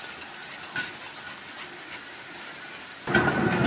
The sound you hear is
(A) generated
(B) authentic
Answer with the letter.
B